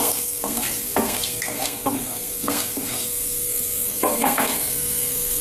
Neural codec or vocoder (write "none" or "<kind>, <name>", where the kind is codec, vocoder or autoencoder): codec, SNAC